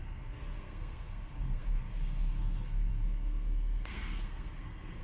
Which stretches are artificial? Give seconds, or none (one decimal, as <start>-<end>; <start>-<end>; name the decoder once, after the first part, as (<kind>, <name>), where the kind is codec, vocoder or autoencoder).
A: 0.0-5.0 (codec, SNAC)